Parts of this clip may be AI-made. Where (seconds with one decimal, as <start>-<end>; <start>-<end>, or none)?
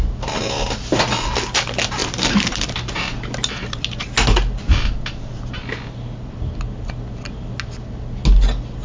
none